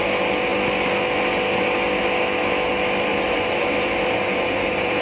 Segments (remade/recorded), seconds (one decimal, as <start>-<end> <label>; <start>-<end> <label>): 0.0-3.1 recorded; 3.1-5.0 remade